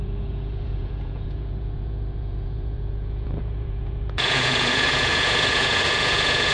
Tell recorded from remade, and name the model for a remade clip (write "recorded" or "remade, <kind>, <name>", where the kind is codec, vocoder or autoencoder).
remade, vocoder, Vocos